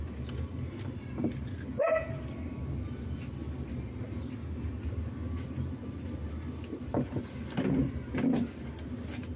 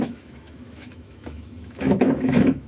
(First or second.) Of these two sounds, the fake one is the second